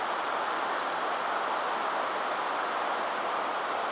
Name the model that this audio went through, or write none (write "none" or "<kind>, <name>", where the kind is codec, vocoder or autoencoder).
none